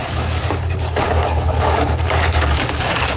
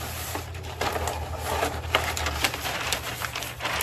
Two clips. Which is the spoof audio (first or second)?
first